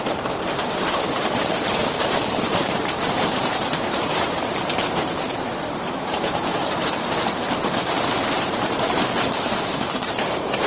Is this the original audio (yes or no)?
no